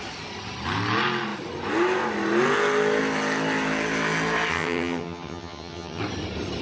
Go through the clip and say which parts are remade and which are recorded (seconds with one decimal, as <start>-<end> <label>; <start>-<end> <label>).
0.0-4.5 recorded; 4.5-6.0 remade; 6.0-6.6 recorded